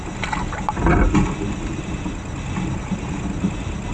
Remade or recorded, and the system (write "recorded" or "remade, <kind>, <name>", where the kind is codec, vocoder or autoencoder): recorded